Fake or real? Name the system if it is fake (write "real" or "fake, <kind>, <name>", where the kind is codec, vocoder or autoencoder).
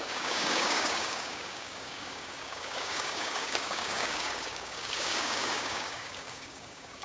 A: fake, codec, DAC